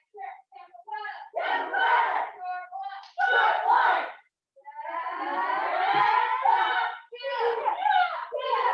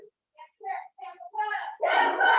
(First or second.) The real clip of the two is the first